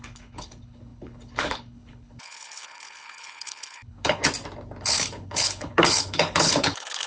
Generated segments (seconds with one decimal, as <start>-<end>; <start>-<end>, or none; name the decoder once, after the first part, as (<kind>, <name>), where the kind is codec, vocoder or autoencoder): 0.0-4.2 (codec, HILCodec); 4.8-7.1